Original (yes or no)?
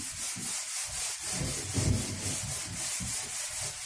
yes